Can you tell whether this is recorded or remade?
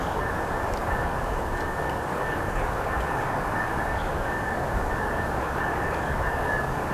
remade